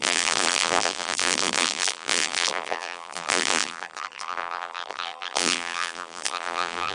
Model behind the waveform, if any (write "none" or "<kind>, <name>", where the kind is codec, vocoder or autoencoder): vocoder, BigVGAN v2